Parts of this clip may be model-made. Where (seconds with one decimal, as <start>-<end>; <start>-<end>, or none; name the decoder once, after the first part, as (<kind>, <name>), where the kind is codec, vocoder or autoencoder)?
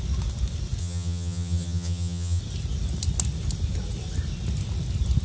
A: 0.8-2.4 (vocoder, HiFi-GAN)